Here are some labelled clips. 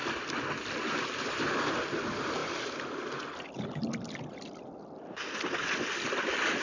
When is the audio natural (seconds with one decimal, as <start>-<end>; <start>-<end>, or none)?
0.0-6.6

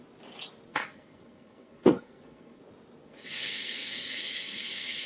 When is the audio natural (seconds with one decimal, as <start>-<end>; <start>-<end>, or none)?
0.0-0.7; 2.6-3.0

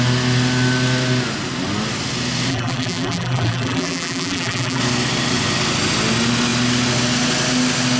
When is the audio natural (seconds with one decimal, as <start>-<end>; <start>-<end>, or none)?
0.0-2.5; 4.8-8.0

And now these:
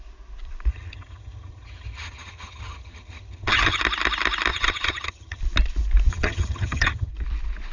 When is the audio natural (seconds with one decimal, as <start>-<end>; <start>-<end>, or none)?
0.0-0.7; 3.8-4.5; 5.4-6.1; 7.1-7.7